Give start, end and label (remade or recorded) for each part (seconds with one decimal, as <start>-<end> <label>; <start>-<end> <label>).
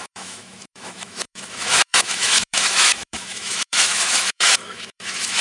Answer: 0.0-5.4 remade